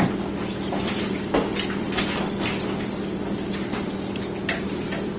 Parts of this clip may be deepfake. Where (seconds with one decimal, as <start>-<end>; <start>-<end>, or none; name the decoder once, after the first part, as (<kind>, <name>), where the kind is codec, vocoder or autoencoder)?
none